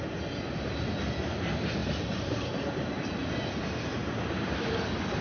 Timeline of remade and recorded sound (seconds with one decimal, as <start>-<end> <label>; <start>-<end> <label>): 0.0-1.8 recorded; 1.8-3.6 remade; 3.6-5.2 recorded